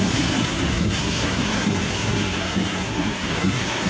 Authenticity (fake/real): fake